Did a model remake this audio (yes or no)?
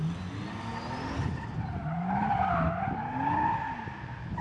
no